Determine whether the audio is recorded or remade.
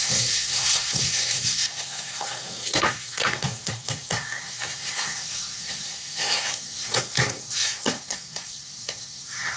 remade